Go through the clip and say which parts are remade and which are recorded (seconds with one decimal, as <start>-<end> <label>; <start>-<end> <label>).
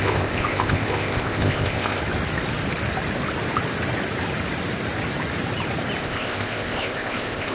0.0-2.0 remade; 2.0-6.0 recorded; 6.0-7.5 remade